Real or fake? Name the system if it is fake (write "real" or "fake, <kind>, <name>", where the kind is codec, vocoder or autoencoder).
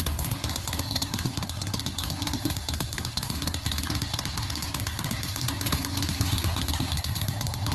fake, codec, SNAC